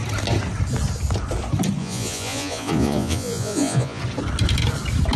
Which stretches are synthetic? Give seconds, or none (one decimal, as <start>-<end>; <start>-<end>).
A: 1.8-4.0

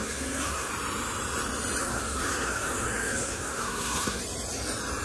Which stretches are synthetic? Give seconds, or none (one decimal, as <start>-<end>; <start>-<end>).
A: 0.0-0.7; 1.8-4.2